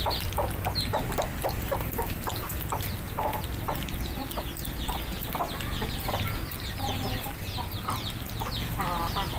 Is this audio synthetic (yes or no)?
no